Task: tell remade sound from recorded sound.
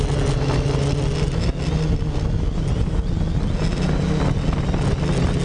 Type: recorded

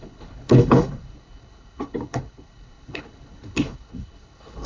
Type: remade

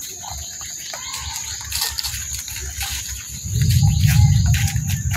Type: recorded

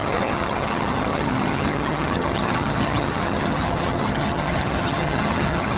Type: remade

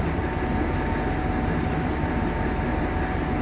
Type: recorded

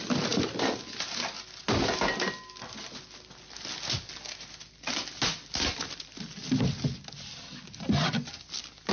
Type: recorded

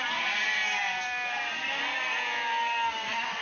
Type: recorded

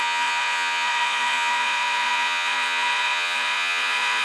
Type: remade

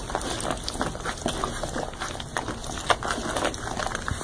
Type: recorded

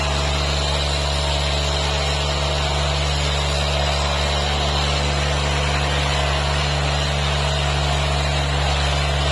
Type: recorded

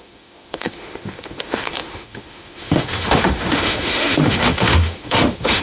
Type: remade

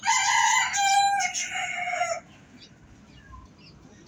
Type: recorded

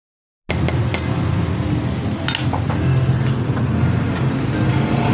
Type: recorded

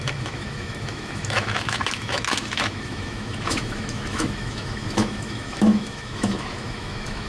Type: remade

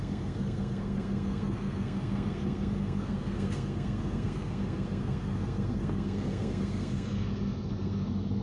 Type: remade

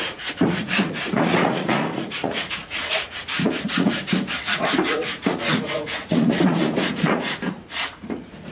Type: remade